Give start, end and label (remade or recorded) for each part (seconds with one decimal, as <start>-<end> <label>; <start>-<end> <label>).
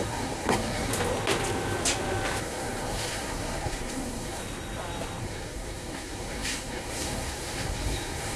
0.0-0.9 remade; 0.9-2.4 recorded; 2.4-4.4 remade; 4.4-5.2 recorded; 5.2-8.4 remade